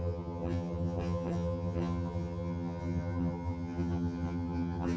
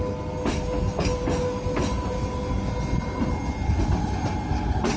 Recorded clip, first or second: second